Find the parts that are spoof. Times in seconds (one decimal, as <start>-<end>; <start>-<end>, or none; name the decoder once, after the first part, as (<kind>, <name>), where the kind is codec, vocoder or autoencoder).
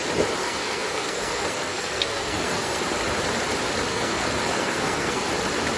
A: 0.4-2.8 (codec, SNAC); 3.9-5.3